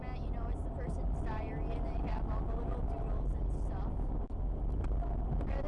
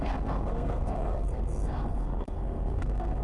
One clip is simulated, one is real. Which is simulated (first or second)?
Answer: second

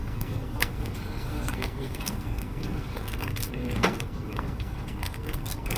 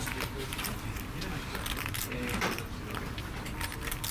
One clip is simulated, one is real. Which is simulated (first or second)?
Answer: first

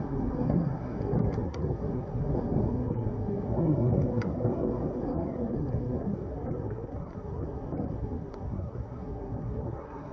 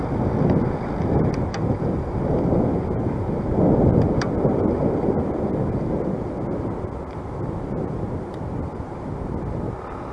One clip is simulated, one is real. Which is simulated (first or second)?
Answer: first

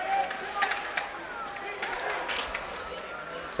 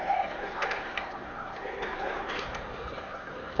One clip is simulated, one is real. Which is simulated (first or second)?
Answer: second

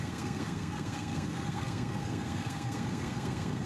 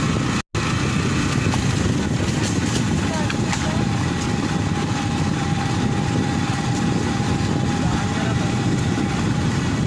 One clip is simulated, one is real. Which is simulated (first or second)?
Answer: first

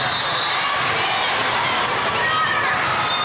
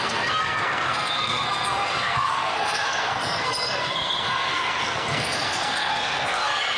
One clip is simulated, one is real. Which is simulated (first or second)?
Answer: second